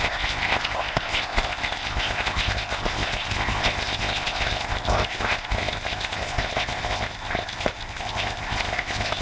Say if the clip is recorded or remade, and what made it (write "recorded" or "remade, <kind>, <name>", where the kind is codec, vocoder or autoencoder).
remade, codec, ZipCodec